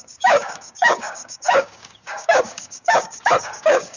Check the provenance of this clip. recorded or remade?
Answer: remade